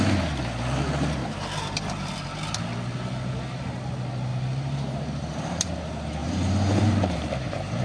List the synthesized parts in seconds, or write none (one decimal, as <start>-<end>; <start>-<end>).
1.2-2.1; 4.3-5.7; 6.2-7.8